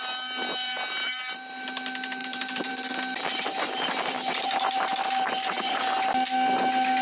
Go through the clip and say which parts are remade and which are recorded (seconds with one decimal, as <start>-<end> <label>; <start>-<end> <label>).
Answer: 0.0-0.4 recorded; 0.4-1.2 remade; 1.2-2.2 recorded; 2.2-2.7 remade; 2.7-3.5 recorded; 3.5-5.8 remade; 5.8-7.0 recorded